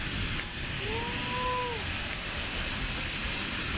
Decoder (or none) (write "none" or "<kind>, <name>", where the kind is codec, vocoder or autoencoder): none